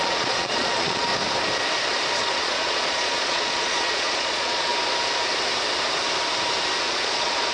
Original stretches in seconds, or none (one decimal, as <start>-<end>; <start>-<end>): 1.1-2.2; 4.7-6.8